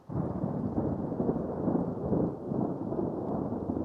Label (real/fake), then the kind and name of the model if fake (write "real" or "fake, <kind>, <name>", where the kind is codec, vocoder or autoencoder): real